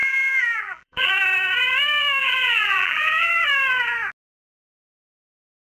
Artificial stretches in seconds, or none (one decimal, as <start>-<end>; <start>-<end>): 0.0-1.1; 2.2-3.3